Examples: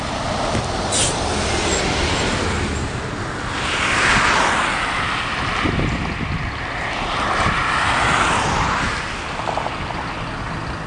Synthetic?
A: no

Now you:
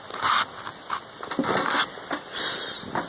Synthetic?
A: no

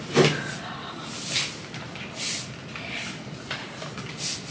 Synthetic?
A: no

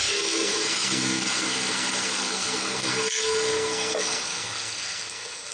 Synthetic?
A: yes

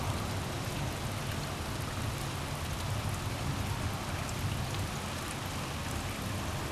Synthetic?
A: no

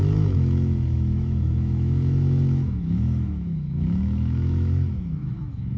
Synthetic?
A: yes